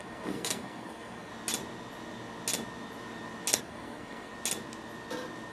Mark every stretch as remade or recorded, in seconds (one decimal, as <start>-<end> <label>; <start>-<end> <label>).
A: 0.0-1.3 remade; 1.3-3.6 recorded; 3.6-4.3 remade; 4.3-5.5 recorded